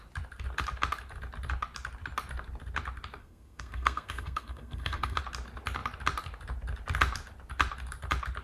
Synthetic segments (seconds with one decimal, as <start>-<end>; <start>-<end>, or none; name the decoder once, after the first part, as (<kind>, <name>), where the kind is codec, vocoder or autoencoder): 3.2-5.2 (codec, SNAC)